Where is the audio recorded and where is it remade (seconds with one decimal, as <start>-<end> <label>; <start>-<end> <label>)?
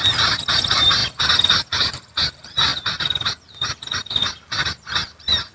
0.0-5.5 recorded